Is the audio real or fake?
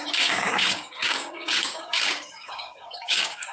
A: fake